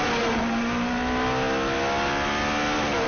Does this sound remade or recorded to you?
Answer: recorded